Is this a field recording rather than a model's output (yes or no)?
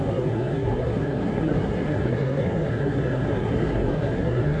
no